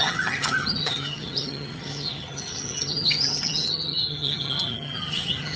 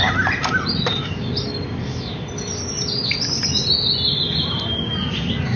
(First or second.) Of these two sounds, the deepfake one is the first